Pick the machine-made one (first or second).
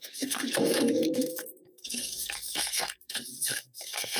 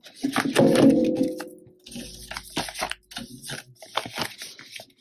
first